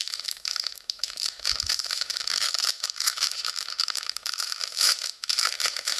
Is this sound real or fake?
fake